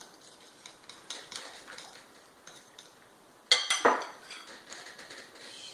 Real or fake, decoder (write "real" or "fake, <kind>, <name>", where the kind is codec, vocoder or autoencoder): real